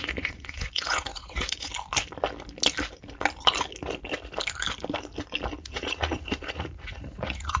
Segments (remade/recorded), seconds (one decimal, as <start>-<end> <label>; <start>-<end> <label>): 0.0-1.7 remade; 1.7-5.6 recorded; 5.6-7.6 remade